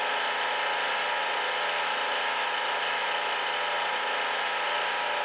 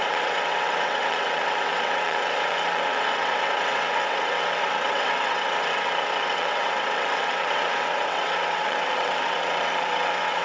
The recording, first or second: first